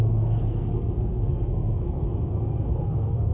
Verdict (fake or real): fake